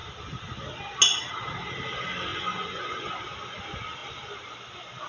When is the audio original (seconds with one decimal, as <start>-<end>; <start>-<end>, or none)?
0.0-2.3; 3.1-5.1